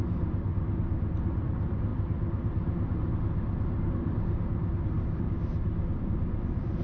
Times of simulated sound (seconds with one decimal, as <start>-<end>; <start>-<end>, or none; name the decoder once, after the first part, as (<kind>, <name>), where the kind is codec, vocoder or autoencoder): none